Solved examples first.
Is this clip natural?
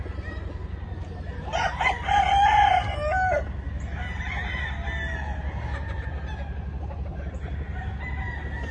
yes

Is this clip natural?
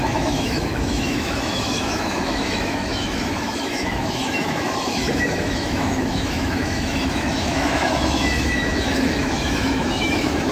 no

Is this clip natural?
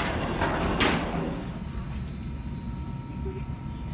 yes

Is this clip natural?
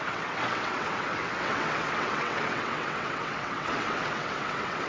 no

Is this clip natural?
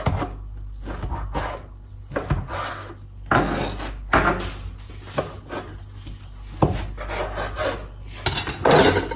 yes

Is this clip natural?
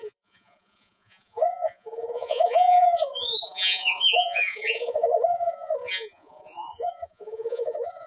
no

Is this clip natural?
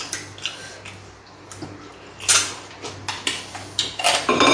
yes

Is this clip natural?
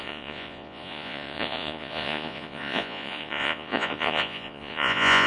no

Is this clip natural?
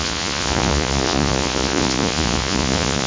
no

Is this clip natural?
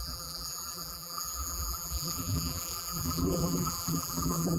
no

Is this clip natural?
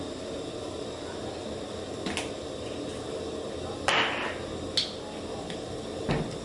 yes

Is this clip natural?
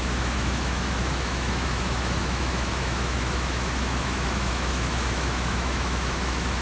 no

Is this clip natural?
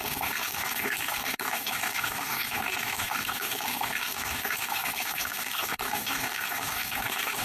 no